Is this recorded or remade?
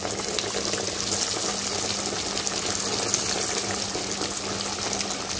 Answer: recorded